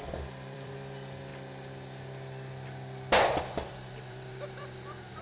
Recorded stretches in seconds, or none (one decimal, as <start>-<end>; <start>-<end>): 1.3-3.4